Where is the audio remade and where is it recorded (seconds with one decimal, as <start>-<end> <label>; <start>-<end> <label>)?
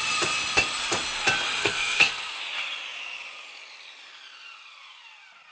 0.0-1.6 recorded; 1.6-2.4 remade; 2.4-5.5 recorded